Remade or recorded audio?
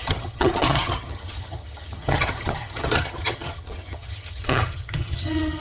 remade